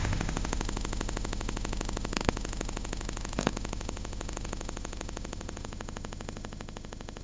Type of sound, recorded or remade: remade